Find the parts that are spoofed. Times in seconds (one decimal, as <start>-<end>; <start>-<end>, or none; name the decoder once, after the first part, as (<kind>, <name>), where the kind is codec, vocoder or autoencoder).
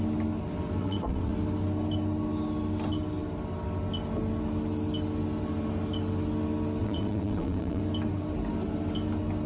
0.8-1.3 (vocoder, WaveNeXt); 6.8-7.8